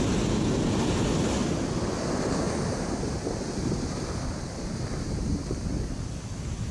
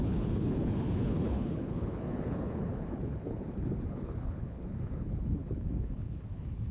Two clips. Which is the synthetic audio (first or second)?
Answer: second